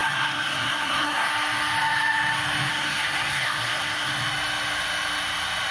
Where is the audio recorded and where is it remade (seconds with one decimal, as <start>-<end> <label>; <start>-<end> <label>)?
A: 0.0-1.3 remade; 1.3-2.7 recorded; 2.7-4.1 remade; 4.1-5.7 recorded